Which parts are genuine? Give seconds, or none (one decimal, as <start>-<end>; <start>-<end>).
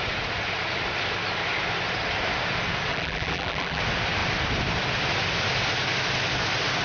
0.0-2.9; 3.8-6.8